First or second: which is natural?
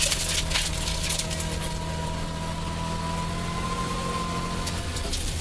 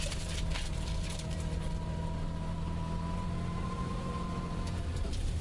first